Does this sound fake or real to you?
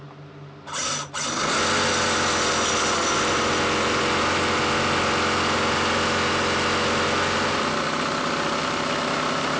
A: real